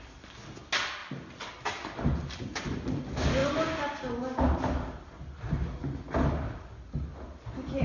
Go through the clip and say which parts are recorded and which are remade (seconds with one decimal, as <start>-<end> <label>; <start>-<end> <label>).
0.0-7.8 recorded

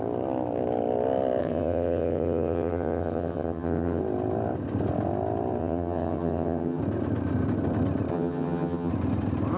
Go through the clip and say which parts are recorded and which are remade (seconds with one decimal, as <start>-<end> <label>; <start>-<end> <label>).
0.0-1.4 recorded; 1.4-4.0 remade; 4.0-5.6 recorded; 5.6-6.8 remade; 6.8-8.1 recorded; 8.1-8.9 remade; 8.9-9.6 recorded

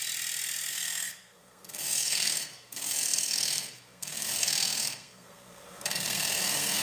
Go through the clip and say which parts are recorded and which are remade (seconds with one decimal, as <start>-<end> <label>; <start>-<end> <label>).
0.0-0.7 recorded; 0.7-6.8 remade